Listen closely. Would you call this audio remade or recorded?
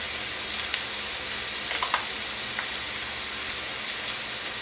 recorded